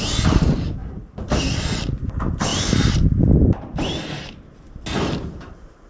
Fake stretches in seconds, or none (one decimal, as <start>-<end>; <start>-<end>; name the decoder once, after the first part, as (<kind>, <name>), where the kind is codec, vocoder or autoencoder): 0.8-1.4 (vocoder, BigVGAN v2); 2.5-3.3